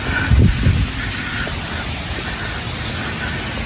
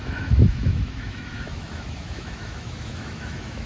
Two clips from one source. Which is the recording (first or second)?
first